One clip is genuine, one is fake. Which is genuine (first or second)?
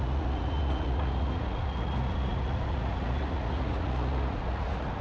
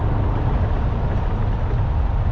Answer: second